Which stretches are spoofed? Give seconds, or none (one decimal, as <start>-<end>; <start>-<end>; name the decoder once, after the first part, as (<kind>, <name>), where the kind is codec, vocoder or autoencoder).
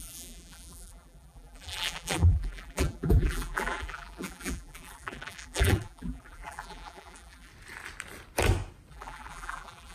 0.0-7.5 (vocoder, BigVGAN v2); 8.9-9.9